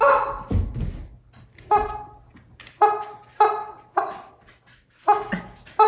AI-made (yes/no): no